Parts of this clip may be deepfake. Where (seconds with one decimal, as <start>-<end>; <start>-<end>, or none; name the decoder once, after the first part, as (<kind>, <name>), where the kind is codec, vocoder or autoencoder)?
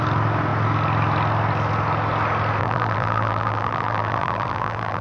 2.6-5.0 (vocoder, BigVGAN v2)